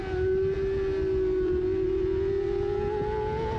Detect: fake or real real